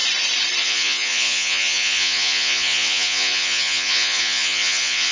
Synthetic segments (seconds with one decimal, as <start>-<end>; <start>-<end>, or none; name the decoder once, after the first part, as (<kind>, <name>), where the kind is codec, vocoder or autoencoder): 0.6-5.1 (vocoder, Vocos)